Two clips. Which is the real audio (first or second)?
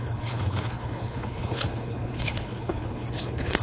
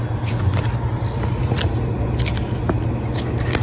second